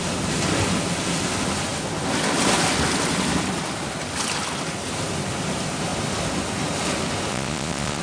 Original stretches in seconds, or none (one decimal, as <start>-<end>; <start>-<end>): 0.0-7.3